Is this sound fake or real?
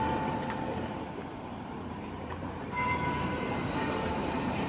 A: fake